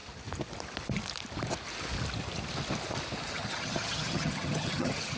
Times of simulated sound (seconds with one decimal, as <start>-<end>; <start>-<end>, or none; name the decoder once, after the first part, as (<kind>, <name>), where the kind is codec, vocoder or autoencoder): 3.3-5.2 (vocoder, HiFi-GAN)